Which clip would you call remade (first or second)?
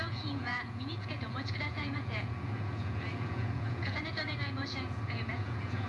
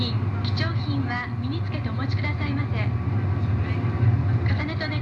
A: first